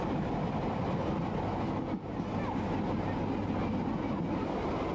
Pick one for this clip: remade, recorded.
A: recorded